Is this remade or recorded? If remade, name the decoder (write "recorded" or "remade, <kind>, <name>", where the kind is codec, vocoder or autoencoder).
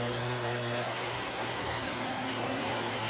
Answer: remade, codec, SNAC